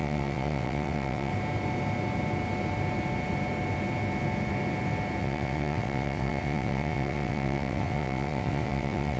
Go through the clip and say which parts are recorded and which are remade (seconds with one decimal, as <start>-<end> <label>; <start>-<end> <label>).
0.0-1.3 remade; 1.3-5.2 recorded; 5.2-9.2 remade